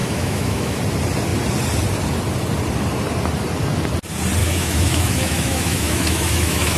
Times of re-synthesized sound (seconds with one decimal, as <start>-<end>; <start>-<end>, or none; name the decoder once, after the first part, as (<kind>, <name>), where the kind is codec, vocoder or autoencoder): 0.0-0.8 (autoencoder, DAC-VAE); 4.4-6.8